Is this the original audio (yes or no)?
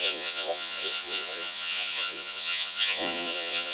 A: no